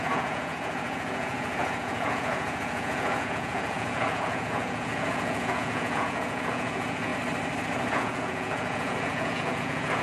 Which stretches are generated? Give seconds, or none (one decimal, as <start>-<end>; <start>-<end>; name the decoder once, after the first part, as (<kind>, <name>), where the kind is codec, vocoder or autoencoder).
0.0-7.1 (vocoder, Vocos); 7.9-10.0